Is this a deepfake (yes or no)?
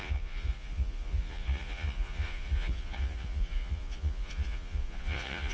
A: yes